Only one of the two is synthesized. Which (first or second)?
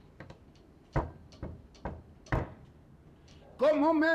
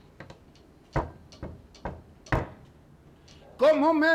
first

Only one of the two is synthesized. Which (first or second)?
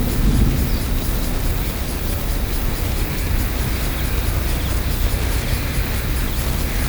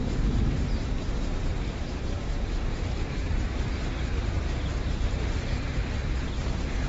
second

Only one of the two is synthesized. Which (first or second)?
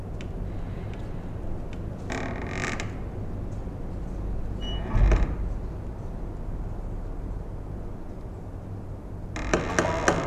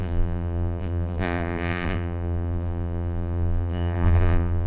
second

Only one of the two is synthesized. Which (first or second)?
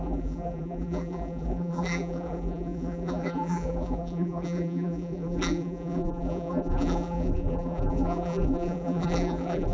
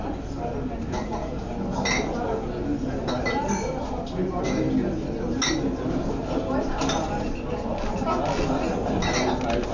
first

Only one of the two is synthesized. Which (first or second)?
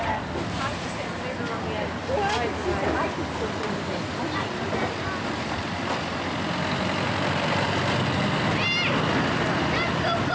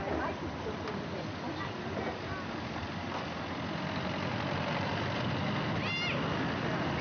second